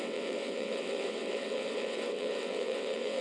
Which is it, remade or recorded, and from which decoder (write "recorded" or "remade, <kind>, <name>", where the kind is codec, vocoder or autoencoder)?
remade, vocoder, WaveNeXt